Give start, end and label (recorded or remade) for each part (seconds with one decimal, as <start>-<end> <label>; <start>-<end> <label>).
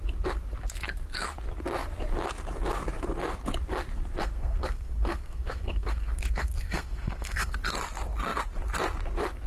0.0-4.2 recorded; 4.2-7.5 remade; 7.5-9.5 recorded